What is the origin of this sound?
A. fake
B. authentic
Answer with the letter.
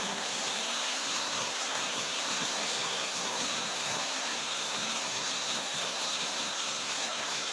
A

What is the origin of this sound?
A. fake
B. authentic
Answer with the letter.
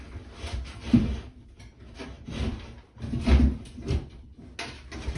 B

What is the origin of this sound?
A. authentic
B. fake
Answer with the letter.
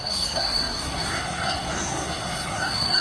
B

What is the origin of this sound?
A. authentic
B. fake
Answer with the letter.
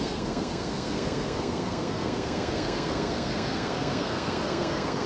B